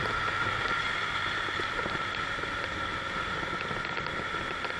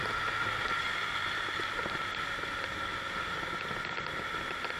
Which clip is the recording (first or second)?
second